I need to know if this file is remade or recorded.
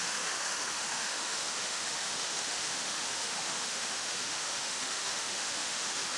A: remade